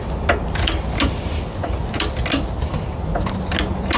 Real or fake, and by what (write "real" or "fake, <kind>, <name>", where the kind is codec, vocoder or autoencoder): real